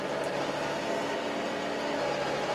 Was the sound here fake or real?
real